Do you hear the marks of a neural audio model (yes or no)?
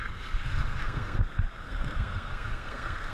yes